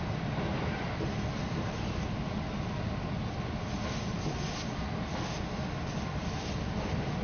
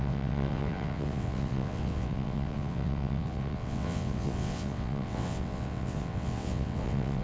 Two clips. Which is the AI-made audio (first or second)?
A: second